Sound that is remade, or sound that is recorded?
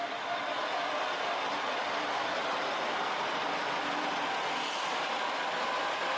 remade